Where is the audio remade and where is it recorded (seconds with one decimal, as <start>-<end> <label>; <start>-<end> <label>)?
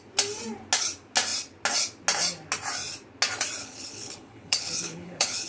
0.0-3.6 recorded; 3.6-5.5 remade